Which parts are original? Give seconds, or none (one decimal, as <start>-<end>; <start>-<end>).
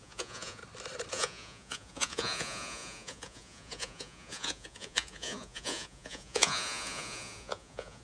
0.6-1.1